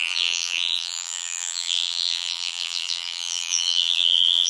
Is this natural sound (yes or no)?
no